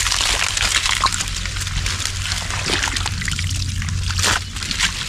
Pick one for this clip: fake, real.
real